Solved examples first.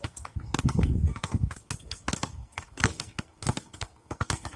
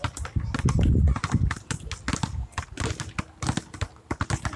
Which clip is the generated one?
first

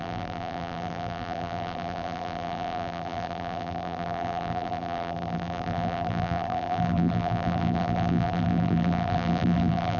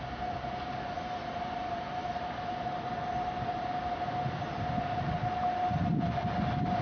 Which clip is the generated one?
first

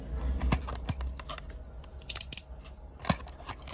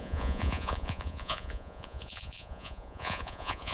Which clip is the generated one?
second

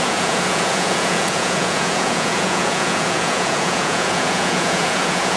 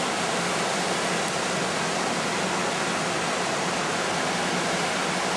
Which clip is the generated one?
first